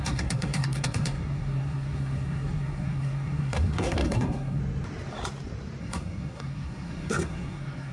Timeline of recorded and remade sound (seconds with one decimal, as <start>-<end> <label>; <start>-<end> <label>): 0.0-4.6 remade; 4.6-5.8 recorded; 5.8-7.9 remade